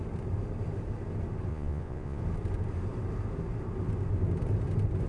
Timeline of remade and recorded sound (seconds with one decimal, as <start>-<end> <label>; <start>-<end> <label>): 0.0-1.5 recorded; 1.5-2.2 remade; 2.2-5.1 recorded